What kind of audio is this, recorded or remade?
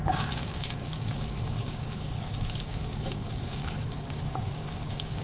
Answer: remade